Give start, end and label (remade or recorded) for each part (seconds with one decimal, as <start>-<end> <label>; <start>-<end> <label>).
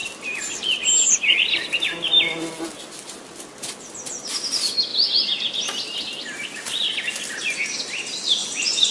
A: 0.0-8.4 recorded; 8.4-8.9 remade